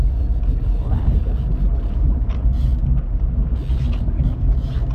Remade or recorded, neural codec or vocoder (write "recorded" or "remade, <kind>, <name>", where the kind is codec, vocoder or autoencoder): recorded